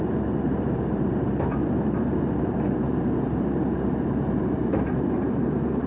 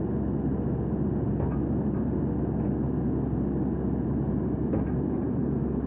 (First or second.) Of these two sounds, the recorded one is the second